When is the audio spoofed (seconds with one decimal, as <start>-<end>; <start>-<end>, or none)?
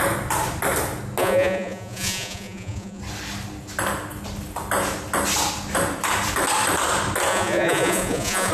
1.2-3.0; 7.3-8.5